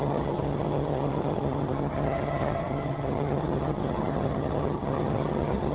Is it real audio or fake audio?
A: fake